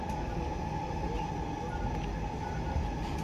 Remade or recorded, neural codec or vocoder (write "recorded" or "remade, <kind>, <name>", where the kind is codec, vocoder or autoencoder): recorded